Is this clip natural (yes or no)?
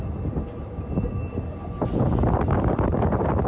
yes